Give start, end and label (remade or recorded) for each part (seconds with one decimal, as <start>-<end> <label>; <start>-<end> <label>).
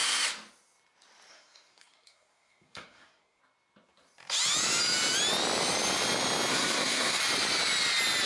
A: 0.0-1.3 recorded; 1.3-3.4 remade; 3.4-6.5 recorded; 6.5-7.2 remade; 7.2-8.3 recorded